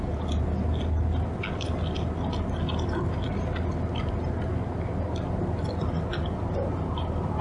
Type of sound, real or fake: real